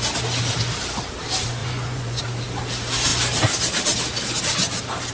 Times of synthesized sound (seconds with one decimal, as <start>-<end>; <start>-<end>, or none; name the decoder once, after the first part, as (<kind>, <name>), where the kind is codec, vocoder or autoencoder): 1.6-2.2 (vocoder, Vocos)